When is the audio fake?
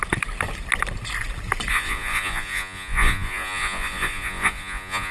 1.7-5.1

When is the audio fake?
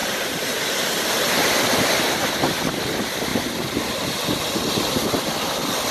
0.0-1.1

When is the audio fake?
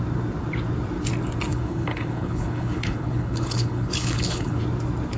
1.5-4.6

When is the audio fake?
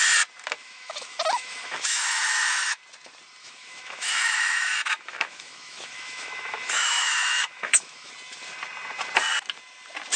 0.6-2.8; 3.4-8.1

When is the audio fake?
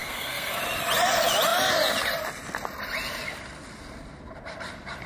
0.0-0.6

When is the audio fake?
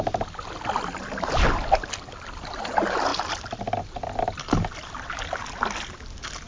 none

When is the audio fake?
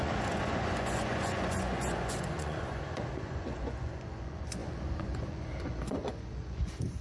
0.0-7.0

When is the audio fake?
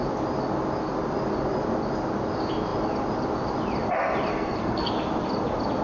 4.3-4.9